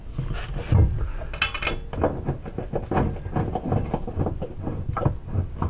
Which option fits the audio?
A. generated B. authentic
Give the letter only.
B